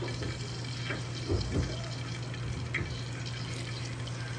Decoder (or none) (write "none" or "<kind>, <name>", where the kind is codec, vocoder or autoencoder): none